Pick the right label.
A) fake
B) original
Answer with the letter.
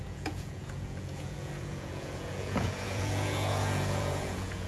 A